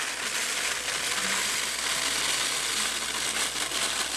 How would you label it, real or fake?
real